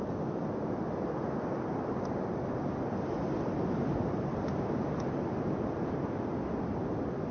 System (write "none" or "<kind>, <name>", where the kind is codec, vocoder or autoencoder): none